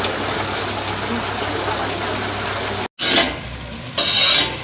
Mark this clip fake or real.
real